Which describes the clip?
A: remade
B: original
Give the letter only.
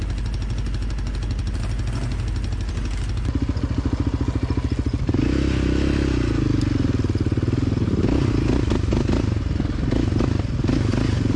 B